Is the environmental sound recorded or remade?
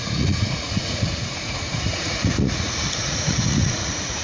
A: remade